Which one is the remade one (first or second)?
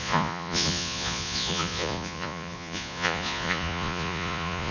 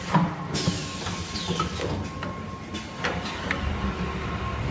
first